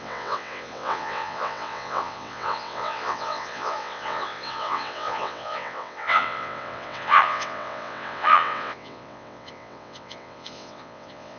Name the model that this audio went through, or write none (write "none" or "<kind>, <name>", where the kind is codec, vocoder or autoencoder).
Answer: vocoder, WaveNeXt